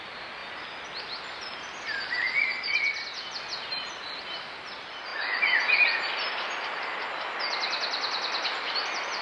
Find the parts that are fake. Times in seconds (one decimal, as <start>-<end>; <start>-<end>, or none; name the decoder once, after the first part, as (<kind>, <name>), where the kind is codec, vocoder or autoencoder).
0.0-0.4 (vocoder, BigVGAN v2); 2.4-5.1; 6.5-9.2